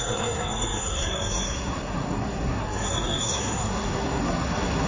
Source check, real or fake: fake